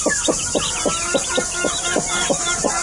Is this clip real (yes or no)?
yes